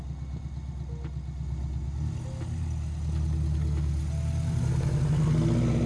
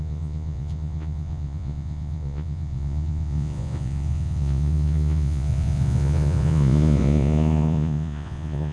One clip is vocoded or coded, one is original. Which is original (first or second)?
first